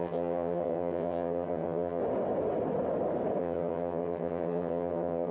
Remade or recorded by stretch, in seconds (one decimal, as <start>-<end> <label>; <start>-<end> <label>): 0.0-2.0 remade; 2.0-3.4 recorded; 3.4-5.3 remade